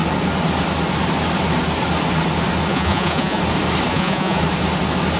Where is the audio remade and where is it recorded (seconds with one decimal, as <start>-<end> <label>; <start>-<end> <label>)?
0.0-2.7 recorded; 2.7-3.4 remade; 3.4-3.9 recorded; 3.9-4.4 remade; 4.4-5.2 recorded